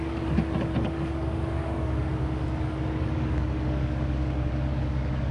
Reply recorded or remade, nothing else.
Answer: remade